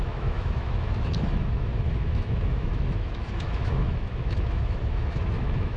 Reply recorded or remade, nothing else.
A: remade